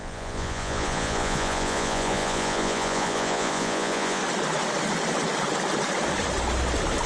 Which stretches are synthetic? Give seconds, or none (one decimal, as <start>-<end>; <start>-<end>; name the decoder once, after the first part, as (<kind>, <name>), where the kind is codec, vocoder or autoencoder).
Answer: 0.0-4.2 (vocoder, Vocos)